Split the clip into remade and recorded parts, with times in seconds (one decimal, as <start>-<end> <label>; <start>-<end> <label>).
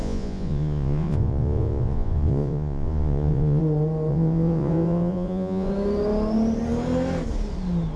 0.0-3.6 remade; 3.6-4.1 recorded; 4.1-5.7 remade; 5.7-8.0 recorded